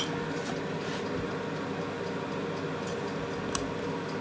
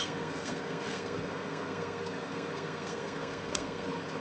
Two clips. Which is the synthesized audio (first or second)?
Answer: second